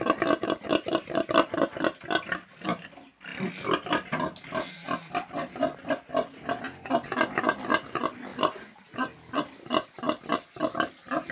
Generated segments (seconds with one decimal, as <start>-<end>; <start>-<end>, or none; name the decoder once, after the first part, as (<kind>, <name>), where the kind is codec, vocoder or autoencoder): none